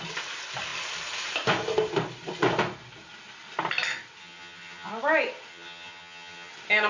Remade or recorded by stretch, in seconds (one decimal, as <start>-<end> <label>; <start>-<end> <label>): 0.0-4.2 recorded; 4.2-4.9 remade; 4.9-5.5 recorded; 5.5-6.5 remade; 6.5-6.9 recorded